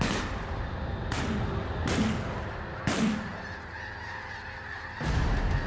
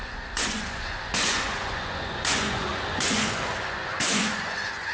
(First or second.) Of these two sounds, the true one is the first